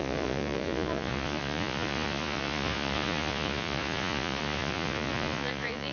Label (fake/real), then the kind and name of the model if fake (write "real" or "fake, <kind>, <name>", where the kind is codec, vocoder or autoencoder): fake, vocoder, Vocos